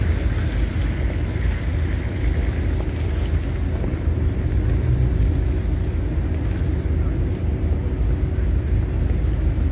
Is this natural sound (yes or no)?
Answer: yes